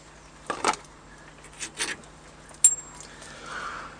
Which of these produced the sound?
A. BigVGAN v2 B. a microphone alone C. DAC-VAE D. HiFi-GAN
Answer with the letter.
B